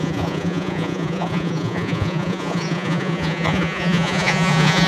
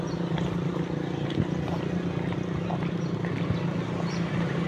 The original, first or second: second